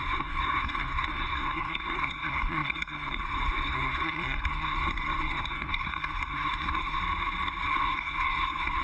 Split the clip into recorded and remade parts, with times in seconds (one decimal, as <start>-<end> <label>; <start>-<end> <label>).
0.0-7.0 remade; 7.0-7.7 recorded; 7.7-8.8 remade